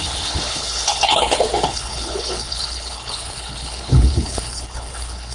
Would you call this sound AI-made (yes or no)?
yes